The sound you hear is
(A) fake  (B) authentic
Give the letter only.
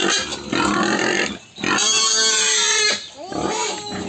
B